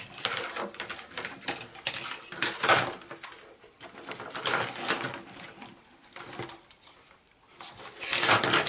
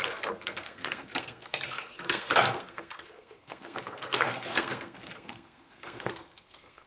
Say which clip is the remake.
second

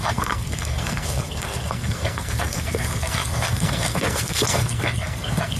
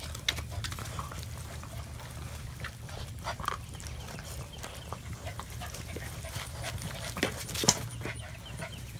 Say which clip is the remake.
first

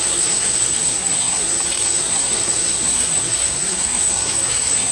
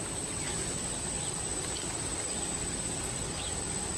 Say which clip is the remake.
first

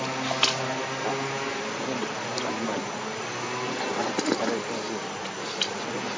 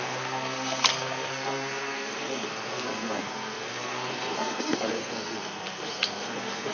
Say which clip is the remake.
second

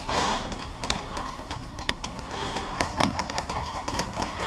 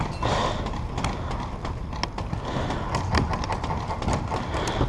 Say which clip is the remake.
first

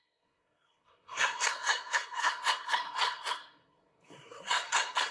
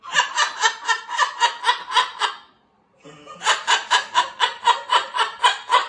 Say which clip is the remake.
first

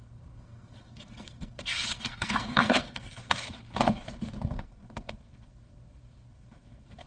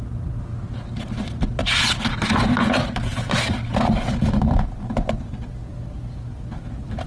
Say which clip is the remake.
first